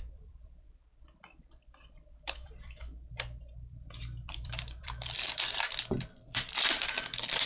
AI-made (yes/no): yes